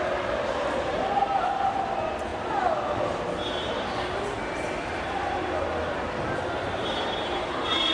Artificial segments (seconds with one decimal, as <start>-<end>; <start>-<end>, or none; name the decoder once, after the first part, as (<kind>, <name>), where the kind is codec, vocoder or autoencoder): none